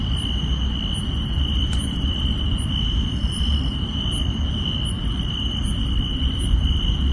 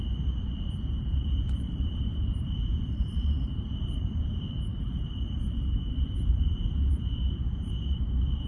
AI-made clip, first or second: second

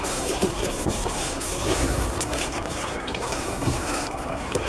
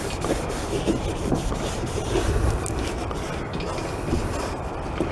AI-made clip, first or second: first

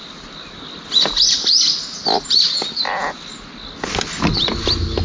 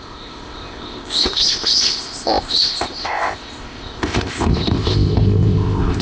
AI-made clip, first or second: second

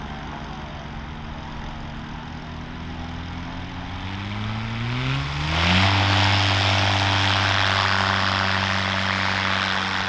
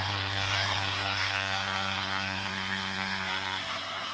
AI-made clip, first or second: second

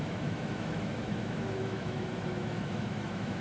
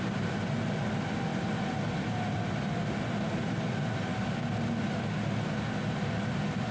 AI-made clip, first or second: first